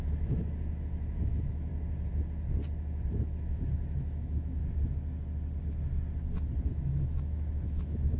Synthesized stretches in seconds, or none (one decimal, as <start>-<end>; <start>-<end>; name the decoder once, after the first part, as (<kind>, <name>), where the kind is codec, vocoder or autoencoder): 0.0-1.7 (autoencoder, DAC-VAE); 3.1-4.6; 6.7-8.2